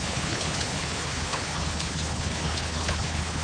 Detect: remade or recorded remade